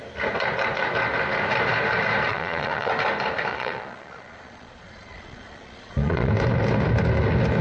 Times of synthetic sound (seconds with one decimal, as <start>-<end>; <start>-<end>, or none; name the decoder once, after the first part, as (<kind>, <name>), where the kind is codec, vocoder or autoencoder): 2.3-2.9 (vocoder, Vocos); 3.5-6.3